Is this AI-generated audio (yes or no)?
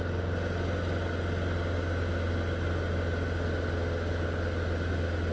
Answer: no